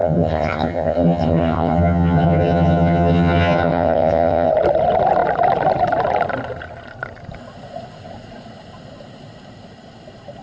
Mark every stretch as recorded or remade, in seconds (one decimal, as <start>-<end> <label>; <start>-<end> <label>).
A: 0.0-4.5 remade; 4.5-10.4 recorded